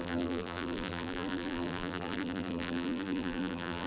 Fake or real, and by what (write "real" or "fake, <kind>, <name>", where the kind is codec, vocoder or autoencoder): fake, vocoder, BigVGAN v2